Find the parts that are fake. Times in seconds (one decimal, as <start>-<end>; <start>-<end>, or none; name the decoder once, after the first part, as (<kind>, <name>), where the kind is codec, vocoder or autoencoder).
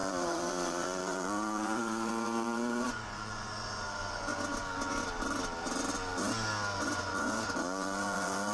0.0-4.3 (vocoder, Vocos); 6.8-8.5